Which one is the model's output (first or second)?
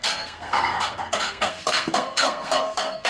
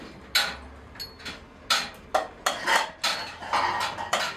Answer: first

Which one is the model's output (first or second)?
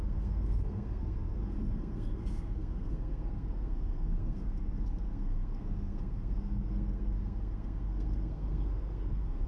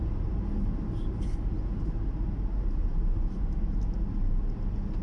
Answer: first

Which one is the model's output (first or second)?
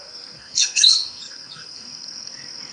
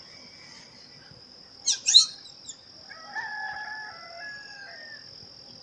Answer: first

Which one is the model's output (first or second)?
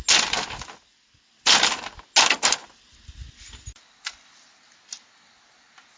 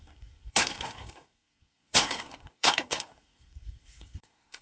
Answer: second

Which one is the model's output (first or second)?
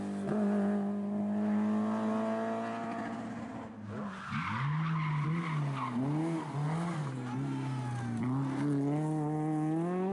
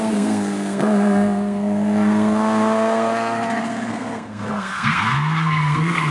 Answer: second